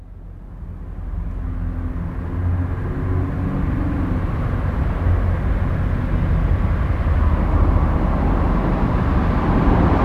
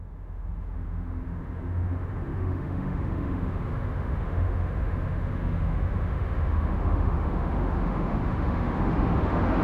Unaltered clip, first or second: first